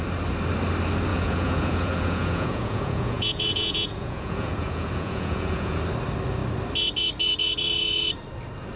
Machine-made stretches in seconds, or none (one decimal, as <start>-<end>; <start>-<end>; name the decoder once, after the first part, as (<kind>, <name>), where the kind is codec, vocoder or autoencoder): 1.1-5.8 (vocoder, Vocos)